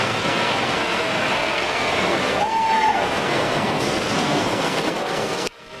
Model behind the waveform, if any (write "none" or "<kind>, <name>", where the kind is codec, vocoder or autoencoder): codec, SNAC